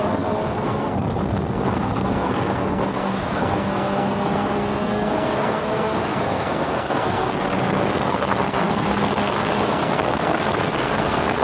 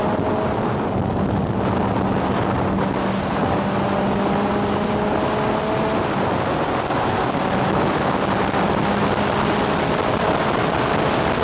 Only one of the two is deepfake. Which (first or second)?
first